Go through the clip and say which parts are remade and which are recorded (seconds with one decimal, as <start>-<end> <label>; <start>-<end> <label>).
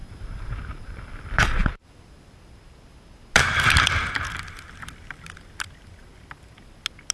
0.0-7.1 recorded